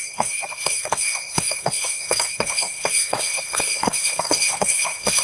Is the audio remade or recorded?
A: remade